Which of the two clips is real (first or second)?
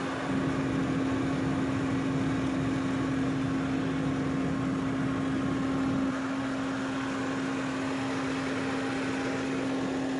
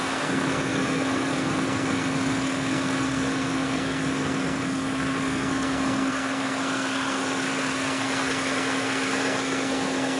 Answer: first